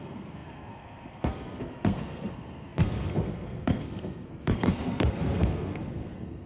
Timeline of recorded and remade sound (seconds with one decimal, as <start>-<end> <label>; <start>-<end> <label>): 0.0-6.5 remade

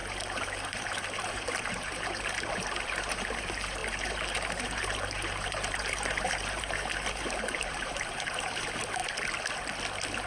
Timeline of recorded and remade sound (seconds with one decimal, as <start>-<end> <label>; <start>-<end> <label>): 0.0-9.0 remade; 9.0-10.3 recorded

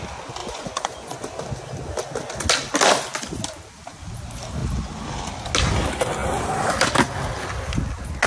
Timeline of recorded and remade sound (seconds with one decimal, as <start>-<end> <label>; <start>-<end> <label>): 0.0-0.4 recorded; 0.4-1.3 remade; 1.3-8.3 recorded

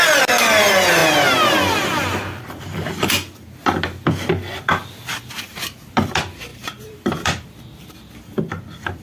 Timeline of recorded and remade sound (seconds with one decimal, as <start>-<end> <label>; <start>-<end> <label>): 0.0-6.5 recorded; 6.5-7.6 remade; 7.6-9.0 recorded

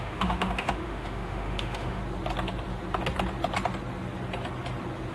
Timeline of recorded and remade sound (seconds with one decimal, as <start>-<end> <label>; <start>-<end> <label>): 0.0-2.0 remade; 2.0-5.1 recorded

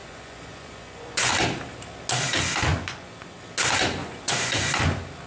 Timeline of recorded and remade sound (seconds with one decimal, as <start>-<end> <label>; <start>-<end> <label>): 0.0-1.3 remade; 1.3-2.7 recorded; 2.7-3.4 remade; 3.4-4.0 recorded; 4.0-4.8 remade; 4.8-5.3 recorded